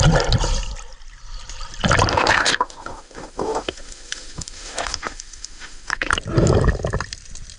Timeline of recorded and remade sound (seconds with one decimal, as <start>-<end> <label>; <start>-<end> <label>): 0.0-2.1 recorded; 2.1-6.1 remade; 6.1-7.6 recorded